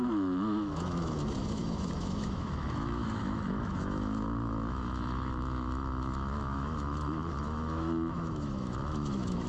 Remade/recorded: remade